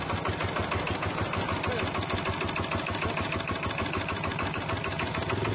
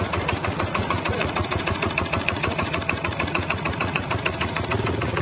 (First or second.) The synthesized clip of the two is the second